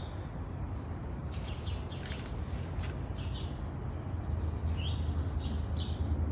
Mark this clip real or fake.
real